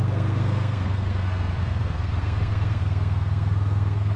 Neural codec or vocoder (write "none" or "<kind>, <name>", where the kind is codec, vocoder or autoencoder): codec, SNAC